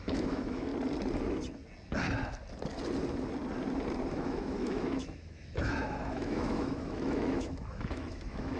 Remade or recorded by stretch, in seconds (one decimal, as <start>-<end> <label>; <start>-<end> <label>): 0.0-0.7 remade; 0.7-4.1 recorded; 4.1-8.6 remade